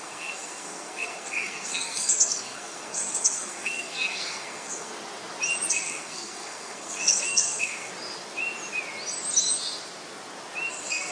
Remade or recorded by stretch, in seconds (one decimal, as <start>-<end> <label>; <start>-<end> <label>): 0.0-4.9 remade; 4.9-5.7 recorded; 5.7-7.9 remade; 7.9-10.7 recorded; 10.7-11.1 remade